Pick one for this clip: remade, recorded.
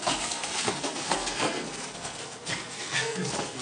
remade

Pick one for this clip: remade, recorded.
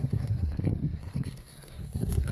remade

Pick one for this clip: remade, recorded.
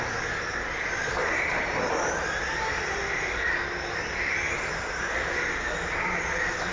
recorded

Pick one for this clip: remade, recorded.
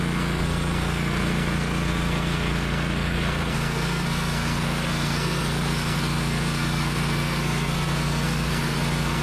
remade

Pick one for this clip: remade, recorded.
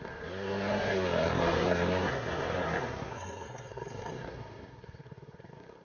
remade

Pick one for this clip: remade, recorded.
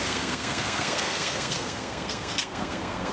remade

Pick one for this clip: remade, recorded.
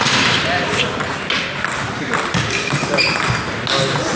recorded